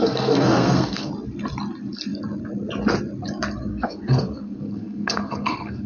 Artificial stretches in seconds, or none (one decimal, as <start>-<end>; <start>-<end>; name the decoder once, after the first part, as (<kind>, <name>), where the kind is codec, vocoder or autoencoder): 0.0-1.1 (codec, SNAC); 3.7-5.9